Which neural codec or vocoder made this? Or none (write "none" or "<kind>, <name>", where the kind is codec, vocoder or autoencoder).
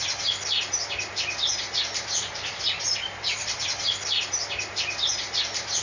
none